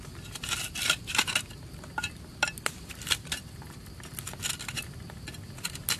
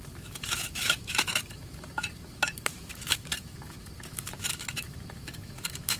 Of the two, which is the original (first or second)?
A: first